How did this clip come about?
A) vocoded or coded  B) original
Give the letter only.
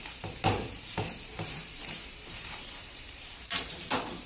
A